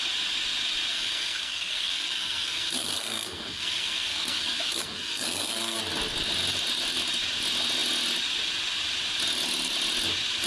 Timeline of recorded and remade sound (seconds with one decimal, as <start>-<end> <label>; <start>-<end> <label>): 0.0-0.9 recorded; 0.9-5.8 remade; 5.8-10.5 recorded